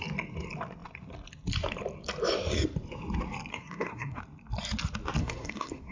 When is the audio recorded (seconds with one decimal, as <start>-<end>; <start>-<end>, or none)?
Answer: 0.0-3.5; 4.2-5.2